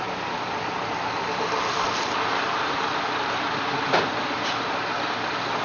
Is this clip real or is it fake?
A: real